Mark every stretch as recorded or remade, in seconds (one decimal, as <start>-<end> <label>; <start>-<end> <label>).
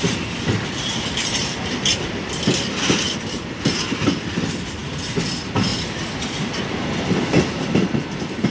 0.0-8.5 recorded